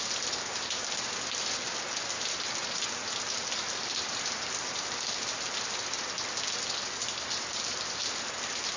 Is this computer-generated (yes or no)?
no